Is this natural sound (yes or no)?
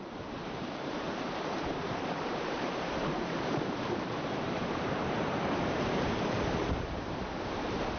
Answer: no